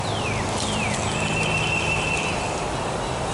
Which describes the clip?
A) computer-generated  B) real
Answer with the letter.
B